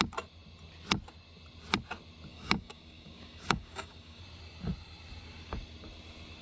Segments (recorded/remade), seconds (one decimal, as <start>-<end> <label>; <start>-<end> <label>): 0.0-2.3 recorded; 2.3-4.2 remade; 4.2-6.4 recorded